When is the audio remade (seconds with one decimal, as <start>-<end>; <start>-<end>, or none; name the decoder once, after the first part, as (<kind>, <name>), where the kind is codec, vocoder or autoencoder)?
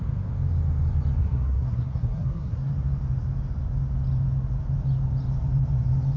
1.2-2.7 (codec, SNAC)